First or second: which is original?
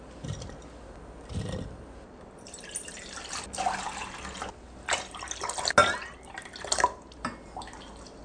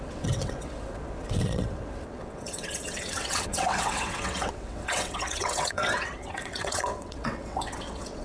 first